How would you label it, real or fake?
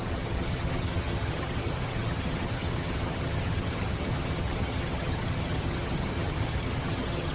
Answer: fake